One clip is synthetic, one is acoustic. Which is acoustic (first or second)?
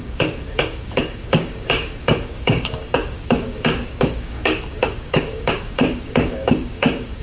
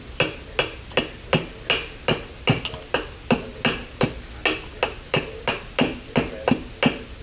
second